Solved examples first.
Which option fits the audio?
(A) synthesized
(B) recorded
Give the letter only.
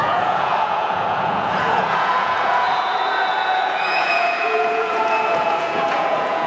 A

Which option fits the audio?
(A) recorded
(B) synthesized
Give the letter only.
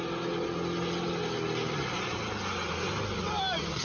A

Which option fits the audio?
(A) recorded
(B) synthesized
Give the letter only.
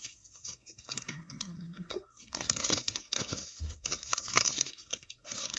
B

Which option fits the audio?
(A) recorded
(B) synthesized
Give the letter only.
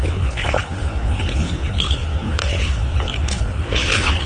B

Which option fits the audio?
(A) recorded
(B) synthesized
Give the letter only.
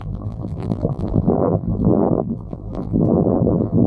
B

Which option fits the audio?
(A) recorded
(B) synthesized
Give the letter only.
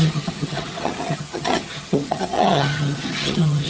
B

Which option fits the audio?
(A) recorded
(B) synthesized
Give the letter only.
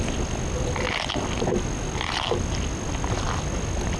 A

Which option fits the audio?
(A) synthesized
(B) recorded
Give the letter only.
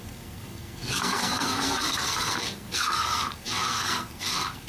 A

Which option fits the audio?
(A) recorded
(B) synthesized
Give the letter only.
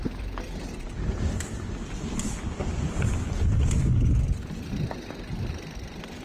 A